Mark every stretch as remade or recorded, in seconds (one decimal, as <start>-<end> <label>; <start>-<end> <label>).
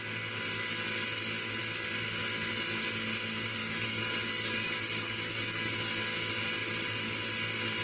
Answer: 0.0-3.6 recorded; 3.6-5.7 remade; 5.7-7.8 recorded